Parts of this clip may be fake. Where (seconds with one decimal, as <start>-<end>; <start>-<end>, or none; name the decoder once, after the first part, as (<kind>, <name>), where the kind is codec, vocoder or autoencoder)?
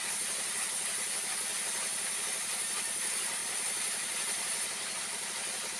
none